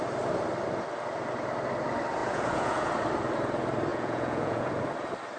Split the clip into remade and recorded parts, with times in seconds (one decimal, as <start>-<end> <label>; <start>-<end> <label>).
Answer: 0.0-2.2 recorded; 2.2-2.9 remade; 2.9-3.9 recorded; 3.9-4.8 remade; 4.8-5.4 recorded

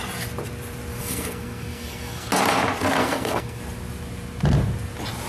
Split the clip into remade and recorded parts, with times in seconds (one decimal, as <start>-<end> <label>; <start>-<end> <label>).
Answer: 0.0-1.0 recorded; 1.0-2.3 remade; 2.3-3.0 recorded; 3.0-3.6 remade; 3.6-5.3 recorded

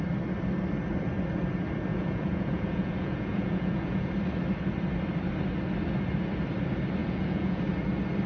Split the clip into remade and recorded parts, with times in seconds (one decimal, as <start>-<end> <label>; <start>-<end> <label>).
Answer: 0.0-1.9 recorded; 1.9-4.1 remade; 4.1-7.0 recorded; 7.0-7.6 remade; 7.6-8.3 recorded

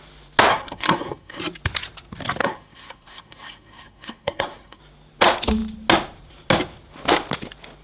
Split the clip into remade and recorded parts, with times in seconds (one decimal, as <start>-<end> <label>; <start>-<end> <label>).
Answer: 0.0-0.5 recorded; 0.5-1.4 remade; 1.4-2.4 recorded; 2.4-4.8 remade; 4.8-7.8 recorded